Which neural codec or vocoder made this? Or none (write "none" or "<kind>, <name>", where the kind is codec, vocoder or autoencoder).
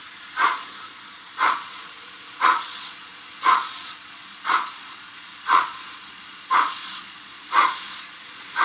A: vocoder, Vocos